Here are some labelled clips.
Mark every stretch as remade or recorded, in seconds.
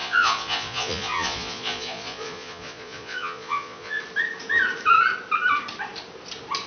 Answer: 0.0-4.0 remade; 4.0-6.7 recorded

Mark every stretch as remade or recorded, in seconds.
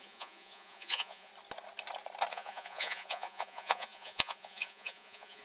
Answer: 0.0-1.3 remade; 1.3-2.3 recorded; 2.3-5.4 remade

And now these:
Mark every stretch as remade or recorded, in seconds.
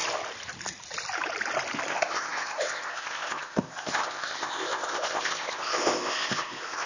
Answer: 0.0-1.9 recorded; 1.9-6.9 remade